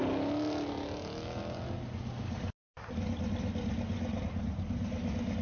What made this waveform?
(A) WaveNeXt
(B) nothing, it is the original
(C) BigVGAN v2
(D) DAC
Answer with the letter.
B